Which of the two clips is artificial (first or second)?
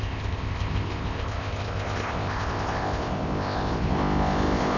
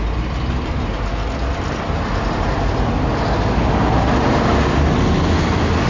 first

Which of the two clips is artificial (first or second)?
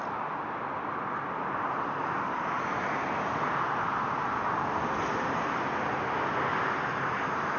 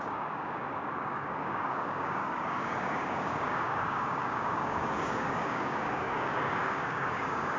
second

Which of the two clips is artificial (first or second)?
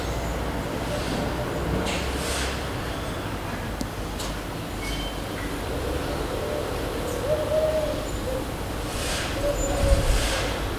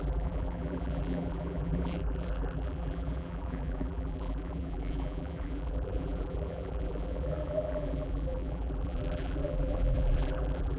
second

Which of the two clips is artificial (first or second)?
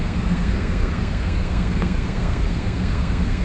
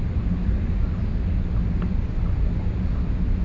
first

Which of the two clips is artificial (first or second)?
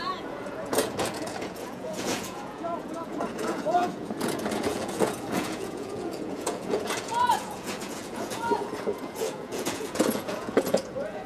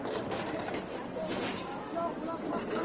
first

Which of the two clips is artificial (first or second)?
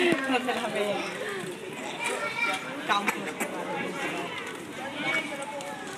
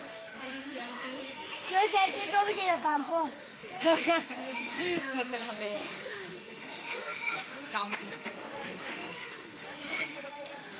second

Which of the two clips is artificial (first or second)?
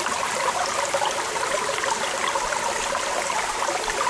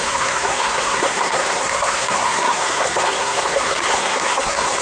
second